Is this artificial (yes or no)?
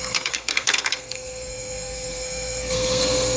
yes